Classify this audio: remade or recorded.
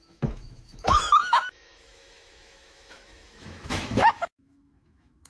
remade